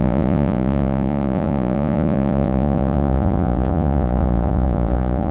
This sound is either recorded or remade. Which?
remade